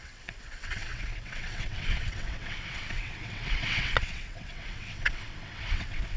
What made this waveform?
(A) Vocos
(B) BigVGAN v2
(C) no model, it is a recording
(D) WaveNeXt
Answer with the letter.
D